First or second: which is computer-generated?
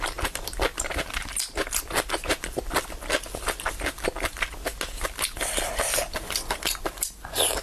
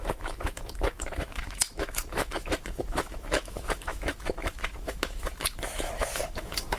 second